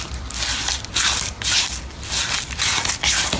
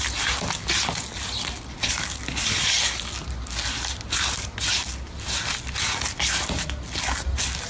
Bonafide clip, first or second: second